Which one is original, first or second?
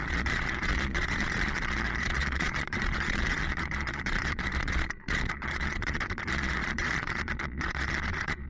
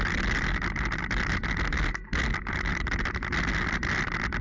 second